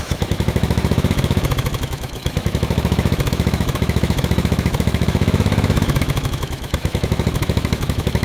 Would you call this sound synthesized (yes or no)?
yes